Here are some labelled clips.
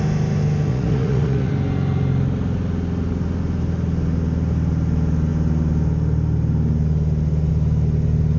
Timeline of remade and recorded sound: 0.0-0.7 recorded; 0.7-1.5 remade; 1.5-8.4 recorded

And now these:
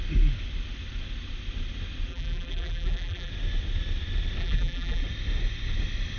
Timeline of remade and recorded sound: 0.0-2.1 recorded; 2.1-3.3 remade; 3.3-4.4 recorded; 4.4-5.0 remade; 5.0-6.2 recorded